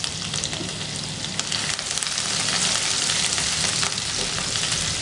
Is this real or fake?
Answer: real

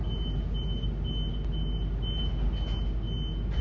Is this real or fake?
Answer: real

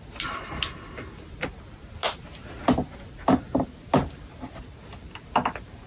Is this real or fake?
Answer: real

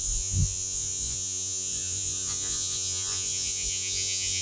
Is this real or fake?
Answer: fake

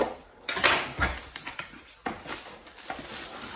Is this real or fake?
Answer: real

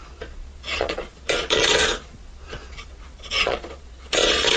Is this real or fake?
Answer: fake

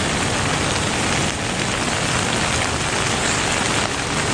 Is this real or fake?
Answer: real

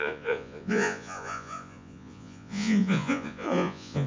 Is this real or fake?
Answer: fake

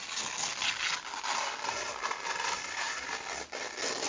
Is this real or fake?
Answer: real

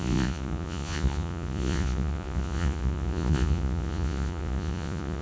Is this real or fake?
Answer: fake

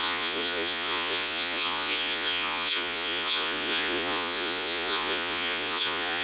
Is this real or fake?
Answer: fake